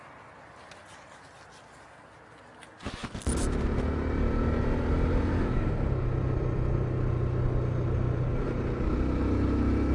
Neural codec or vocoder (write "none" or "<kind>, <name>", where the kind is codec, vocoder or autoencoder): none